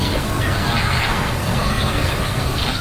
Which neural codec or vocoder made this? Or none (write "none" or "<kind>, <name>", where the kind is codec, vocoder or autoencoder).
codec, SNAC